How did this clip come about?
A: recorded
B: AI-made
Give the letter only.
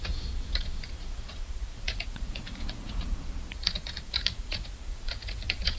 B